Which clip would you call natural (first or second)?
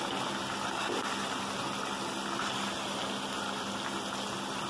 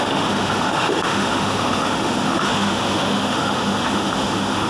first